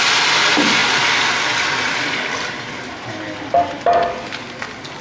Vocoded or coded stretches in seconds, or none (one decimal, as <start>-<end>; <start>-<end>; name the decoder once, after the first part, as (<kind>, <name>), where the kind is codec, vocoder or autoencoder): none